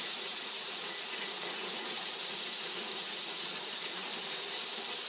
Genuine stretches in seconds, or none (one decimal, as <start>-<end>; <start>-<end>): 4.1-5.1